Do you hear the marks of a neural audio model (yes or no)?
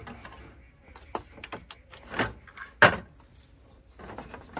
no